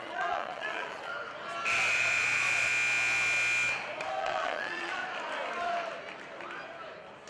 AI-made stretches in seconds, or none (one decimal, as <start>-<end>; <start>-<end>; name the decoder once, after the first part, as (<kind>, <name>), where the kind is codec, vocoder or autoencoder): 0.0-1.1 (vocoder, Vocos); 1.9-2.7; 4.2-5.0